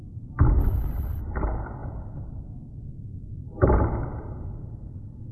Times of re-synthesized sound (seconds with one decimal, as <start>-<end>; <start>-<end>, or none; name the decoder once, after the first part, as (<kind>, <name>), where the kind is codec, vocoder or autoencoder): 0.6-1.2 (codec, HILCodec)